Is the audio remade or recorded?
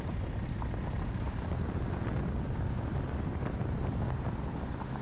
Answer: recorded